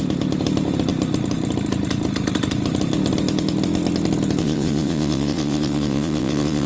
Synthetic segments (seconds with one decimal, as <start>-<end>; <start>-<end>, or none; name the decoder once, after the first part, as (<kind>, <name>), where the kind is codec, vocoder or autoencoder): 4.4-6.7 (vocoder, WaveNeXt)